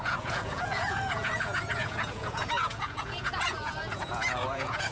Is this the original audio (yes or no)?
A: no